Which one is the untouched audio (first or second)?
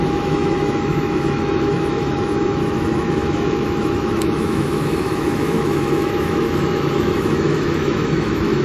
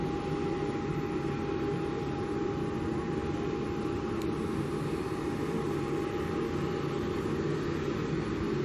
second